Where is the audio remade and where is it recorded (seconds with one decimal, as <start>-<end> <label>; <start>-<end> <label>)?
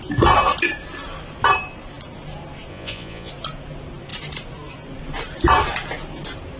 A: 0.0-2.7 recorded; 2.7-3.3 remade; 3.3-6.6 recorded